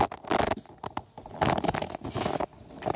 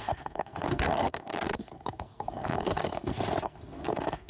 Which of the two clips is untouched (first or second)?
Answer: first